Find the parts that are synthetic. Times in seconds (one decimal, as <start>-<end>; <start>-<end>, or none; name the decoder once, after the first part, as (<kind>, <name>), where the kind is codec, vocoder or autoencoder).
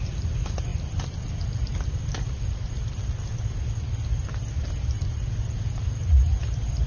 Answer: none